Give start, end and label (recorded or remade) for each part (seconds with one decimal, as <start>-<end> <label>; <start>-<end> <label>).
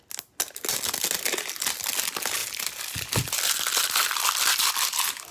0.0-2.4 recorded; 2.4-4.7 remade; 4.7-5.3 recorded